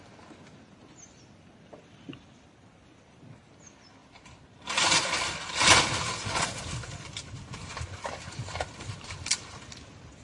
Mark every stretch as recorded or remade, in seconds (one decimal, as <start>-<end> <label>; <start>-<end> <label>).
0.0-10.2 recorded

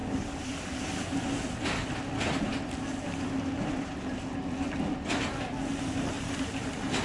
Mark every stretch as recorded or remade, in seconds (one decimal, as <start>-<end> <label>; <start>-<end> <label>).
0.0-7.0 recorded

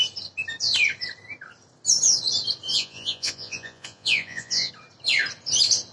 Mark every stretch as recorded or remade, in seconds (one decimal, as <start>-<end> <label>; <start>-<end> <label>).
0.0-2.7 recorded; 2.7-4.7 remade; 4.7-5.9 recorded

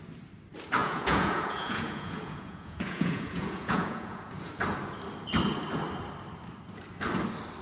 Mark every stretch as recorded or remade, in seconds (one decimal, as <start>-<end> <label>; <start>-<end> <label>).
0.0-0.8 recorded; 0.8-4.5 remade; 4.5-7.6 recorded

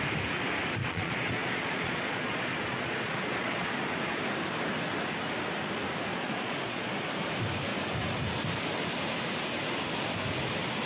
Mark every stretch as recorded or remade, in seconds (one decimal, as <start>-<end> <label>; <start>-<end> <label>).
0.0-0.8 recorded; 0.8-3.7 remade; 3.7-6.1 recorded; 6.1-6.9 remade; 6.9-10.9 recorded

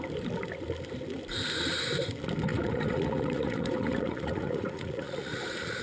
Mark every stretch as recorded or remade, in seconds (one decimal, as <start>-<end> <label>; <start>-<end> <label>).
0.0-2.5 recorded; 2.5-5.8 remade

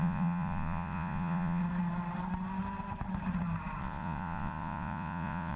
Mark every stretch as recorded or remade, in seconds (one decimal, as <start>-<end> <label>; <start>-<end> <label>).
0.0-1.6 remade; 1.6-3.8 recorded; 3.8-5.6 remade

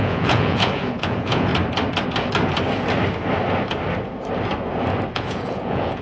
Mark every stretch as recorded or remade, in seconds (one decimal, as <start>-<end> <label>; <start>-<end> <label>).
0.0-1.5 remade; 1.5-5.1 recorded; 5.1-6.0 remade